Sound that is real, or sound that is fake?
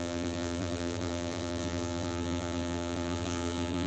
fake